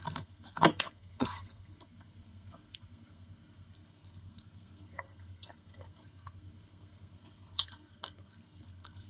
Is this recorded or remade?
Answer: remade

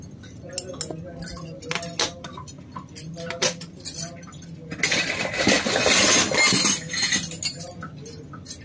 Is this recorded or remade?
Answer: recorded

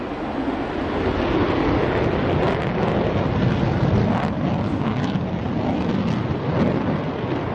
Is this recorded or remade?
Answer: recorded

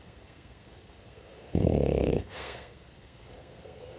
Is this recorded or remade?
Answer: remade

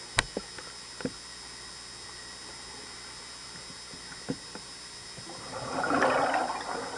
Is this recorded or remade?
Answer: recorded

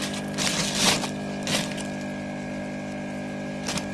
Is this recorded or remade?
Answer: recorded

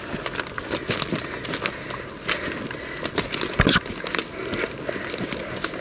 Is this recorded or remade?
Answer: recorded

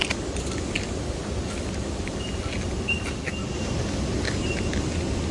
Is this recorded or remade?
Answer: recorded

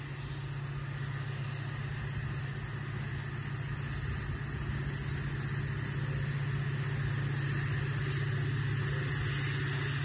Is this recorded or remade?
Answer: recorded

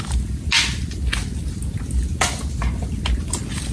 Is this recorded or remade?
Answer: recorded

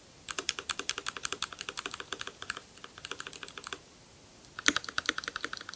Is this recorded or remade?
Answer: remade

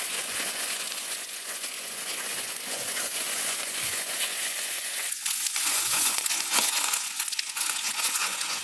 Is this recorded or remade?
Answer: remade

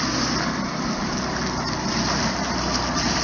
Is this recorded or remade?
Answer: recorded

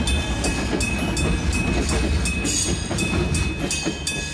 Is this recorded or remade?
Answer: recorded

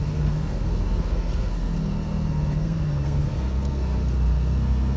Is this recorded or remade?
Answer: remade